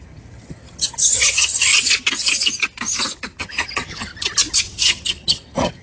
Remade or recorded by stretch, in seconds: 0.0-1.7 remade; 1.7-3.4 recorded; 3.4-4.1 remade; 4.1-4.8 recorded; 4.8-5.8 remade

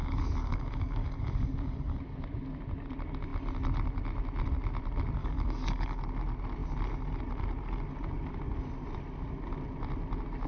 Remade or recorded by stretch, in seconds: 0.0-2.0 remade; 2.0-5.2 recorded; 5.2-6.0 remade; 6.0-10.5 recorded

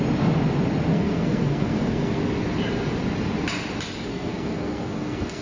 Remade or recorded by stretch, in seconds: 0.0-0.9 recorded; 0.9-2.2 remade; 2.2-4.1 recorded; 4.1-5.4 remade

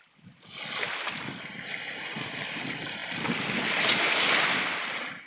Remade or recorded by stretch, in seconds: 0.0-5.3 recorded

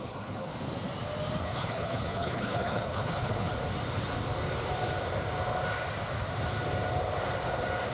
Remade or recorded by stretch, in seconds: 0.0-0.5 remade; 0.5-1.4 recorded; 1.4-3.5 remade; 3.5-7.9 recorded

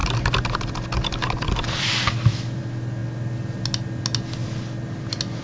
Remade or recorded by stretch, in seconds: 0.0-5.4 recorded

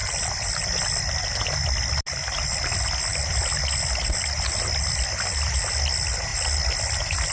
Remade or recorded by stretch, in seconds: 0.0-7.3 recorded

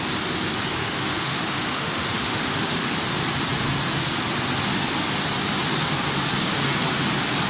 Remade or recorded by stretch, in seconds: 0.0-0.8 recorded; 0.8-2.9 remade; 2.9-7.5 recorded